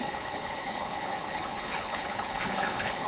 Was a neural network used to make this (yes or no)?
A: yes